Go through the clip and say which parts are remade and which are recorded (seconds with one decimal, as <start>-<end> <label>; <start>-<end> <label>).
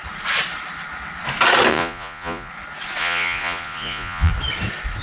0.0-1.7 recorded; 1.7-2.5 remade; 2.5-3.0 recorded; 3.0-4.3 remade; 4.3-5.0 recorded